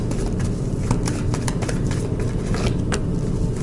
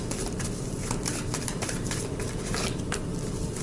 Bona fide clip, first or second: first